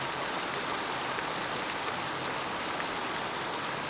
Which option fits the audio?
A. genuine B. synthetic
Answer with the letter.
A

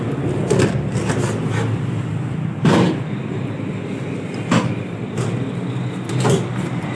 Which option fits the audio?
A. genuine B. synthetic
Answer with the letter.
A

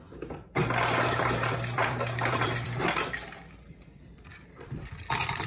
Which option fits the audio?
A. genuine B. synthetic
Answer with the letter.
B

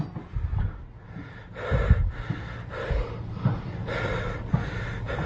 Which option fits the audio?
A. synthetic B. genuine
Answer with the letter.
B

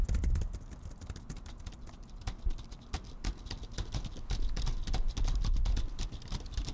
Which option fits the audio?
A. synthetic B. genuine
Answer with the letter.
B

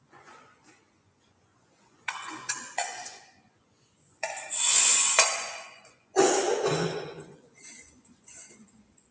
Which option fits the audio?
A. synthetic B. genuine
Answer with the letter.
A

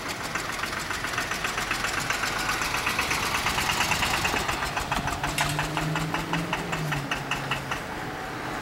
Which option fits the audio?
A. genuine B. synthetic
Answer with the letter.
A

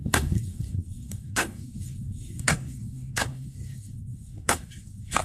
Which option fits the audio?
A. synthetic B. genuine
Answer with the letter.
A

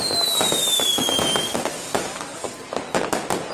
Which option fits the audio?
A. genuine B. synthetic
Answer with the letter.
A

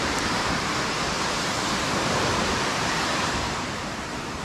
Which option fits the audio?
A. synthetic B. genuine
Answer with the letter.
A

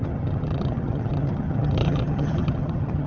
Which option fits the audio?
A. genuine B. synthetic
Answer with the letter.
B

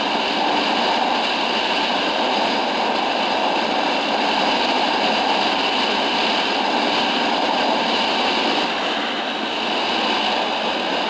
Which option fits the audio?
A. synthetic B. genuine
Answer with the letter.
B